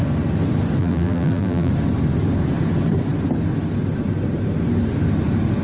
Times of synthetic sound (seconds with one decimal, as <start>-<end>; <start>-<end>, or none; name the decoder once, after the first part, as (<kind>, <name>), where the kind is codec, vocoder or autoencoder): 0.8-1.7 (vocoder, BigVGAN v2)